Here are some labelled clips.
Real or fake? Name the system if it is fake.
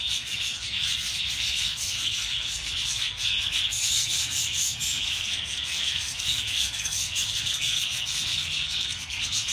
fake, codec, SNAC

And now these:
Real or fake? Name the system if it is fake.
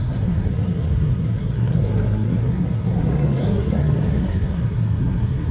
fake, codec, SNAC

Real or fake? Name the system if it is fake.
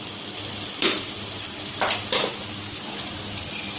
real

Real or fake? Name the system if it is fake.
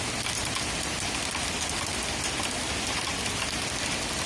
real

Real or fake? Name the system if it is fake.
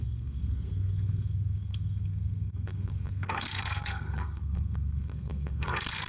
fake, codec, SNAC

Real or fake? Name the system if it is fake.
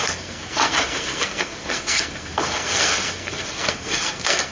fake, codec, SNAC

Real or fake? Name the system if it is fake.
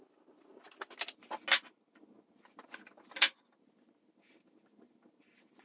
real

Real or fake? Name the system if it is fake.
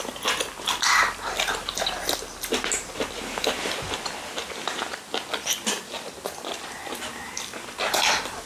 real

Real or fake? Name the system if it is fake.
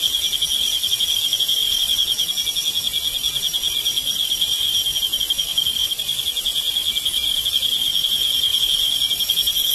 real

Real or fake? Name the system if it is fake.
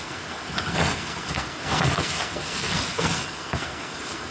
fake, codec, SNAC